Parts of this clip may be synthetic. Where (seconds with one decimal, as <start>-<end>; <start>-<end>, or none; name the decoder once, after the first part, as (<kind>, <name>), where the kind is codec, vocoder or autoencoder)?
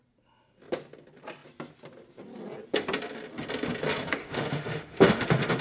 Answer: 4.2-5.6 (autoencoder, DAC-VAE)